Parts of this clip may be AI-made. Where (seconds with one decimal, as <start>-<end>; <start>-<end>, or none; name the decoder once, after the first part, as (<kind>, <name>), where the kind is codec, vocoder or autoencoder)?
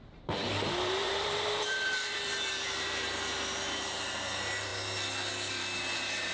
0.0-4.7 (vocoder, BigVGAN v2); 5.5-6.3